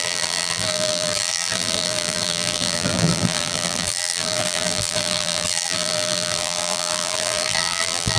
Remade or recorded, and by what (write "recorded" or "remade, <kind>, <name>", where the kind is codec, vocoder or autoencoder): remade, vocoder, BigVGAN v2